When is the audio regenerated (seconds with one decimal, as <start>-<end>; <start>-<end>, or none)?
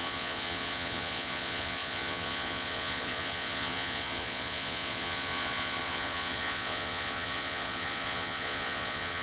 0.0-9.2